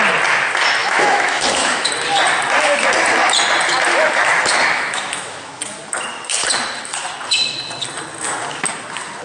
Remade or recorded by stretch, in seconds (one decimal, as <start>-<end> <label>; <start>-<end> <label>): 0.0-0.8 recorded; 0.8-1.9 remade; 1.9-3.9 recorded; 3.9-5.6 remade; 5.6-9.2 recorded

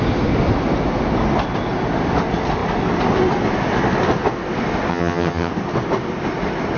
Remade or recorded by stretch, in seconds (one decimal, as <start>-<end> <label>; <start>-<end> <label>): 0.0-4.9 recorded; 4.9-5.5 remade; 5.5-6.8 recorded

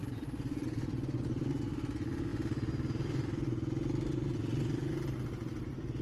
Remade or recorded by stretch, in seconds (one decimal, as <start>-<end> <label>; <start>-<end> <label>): 0.0-1.6 remade; 1.6-6.0 recorded

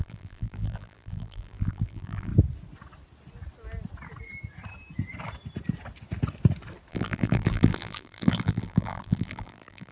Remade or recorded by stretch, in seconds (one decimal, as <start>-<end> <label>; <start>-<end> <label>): 0.0-2.3 remade; 2.3-6.9 recorded; 6.9-9.9 remade

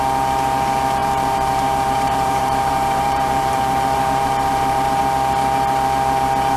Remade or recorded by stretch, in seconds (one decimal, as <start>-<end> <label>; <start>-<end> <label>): 0.0-1.0 recorded; 1.0-5.0 remade; 5.0-6.6 recorded

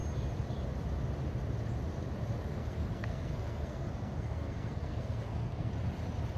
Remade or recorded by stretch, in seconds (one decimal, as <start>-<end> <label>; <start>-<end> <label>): 0.0-2.5 recorded; 2.5-5.7 remade; 5.7-6.4 recorded

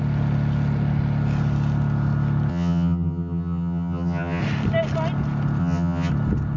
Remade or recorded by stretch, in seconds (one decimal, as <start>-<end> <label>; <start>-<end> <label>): 0.0-2.5 recorded; 2.5-4.4 remade; 4.4-5.6 recorded; 5.6-6.1 remade; 6.1-6.6 recorded